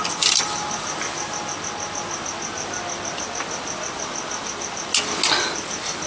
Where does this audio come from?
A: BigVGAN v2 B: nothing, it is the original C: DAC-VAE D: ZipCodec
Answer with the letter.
B